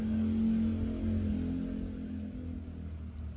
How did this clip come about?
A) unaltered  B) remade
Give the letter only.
A